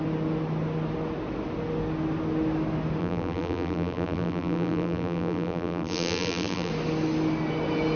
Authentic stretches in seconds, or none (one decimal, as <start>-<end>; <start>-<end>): 0.0-3.0; 6.7-8.0